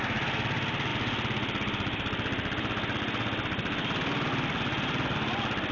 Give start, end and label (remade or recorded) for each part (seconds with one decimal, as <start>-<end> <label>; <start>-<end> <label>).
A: 0.0-5.7 recorded